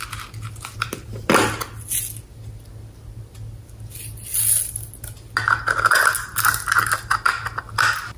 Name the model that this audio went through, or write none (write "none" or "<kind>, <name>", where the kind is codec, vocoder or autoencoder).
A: none